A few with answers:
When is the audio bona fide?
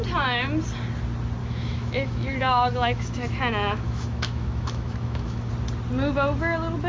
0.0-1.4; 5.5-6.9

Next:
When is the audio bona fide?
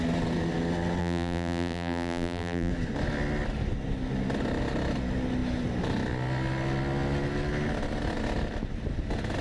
0.0-1.0; 2.7-9.4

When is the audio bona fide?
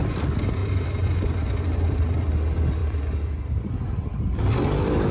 0.0-0.6; 2.3-5.1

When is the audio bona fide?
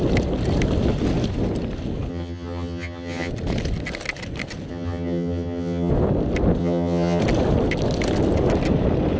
0.0-2.1; 3.3-4.7; 5.9-6.6; 7.2-9.2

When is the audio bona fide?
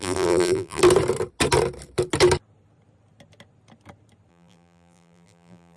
0.8-4.3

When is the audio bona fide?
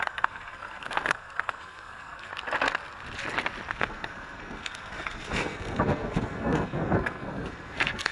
2.3-3.7